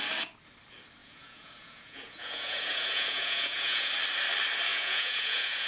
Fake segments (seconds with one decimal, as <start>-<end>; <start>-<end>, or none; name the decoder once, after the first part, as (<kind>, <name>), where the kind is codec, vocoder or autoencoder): 1.0-3.9 (vocoder, Vocos); 4.7-5.7